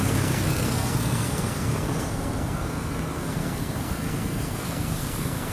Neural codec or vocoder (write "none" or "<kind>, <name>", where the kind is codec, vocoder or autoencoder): codec, SNAC